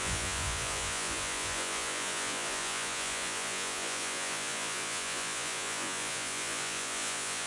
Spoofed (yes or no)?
yes